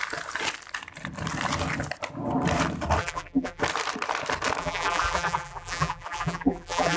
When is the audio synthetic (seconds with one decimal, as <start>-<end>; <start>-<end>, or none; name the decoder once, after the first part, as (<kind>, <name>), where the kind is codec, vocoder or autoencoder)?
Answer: 3.0-3.6 (vocoder, BigVGAN v2); 4.6-7.0